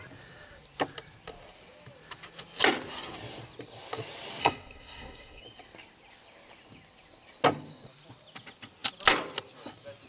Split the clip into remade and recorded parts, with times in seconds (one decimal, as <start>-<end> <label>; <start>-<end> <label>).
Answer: 0.0-4.4 recorded; 4.4-5.4 remade; 5.4-10.1 recorded